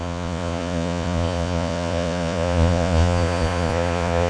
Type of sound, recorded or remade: remade